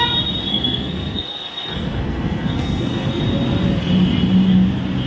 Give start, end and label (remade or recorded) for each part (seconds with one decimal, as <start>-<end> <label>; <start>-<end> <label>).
0.0-0.5 recorded; 0.5-3.2 remade; 3.2-5.1 recorded